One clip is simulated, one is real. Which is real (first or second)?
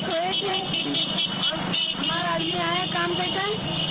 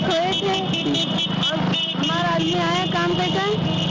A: second